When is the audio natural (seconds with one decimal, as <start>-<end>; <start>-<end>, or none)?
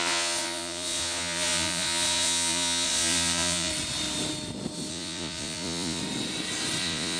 3.7-4.9; 6.0-6.8